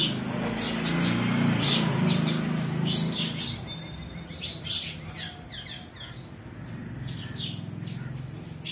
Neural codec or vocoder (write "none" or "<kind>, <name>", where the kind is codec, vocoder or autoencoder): none